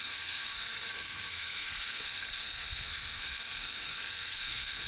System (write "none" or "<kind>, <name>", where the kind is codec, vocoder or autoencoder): codec, SNAC